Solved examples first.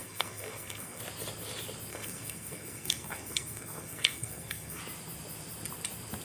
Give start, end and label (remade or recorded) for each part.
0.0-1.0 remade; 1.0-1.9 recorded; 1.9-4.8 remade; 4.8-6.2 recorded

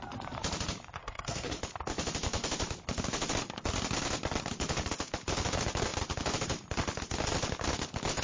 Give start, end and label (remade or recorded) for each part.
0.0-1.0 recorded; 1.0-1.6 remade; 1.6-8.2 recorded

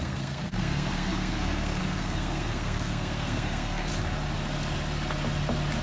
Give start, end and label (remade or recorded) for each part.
0.0-3.9 remade; 3.9-5.8 recorded

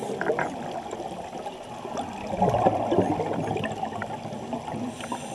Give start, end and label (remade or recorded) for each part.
0.0-5.3 recorded